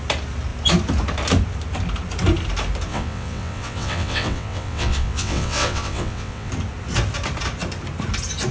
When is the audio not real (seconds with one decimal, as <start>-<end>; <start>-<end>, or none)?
2.9-6.5